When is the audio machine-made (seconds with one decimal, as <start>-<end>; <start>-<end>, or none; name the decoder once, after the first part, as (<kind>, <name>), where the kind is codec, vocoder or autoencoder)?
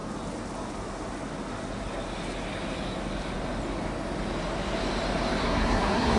5.4-6.2 (codec, SNAC)